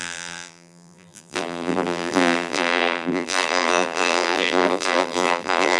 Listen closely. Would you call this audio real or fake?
fake